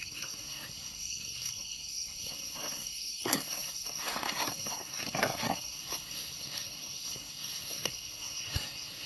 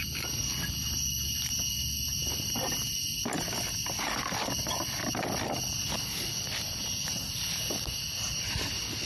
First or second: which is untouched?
second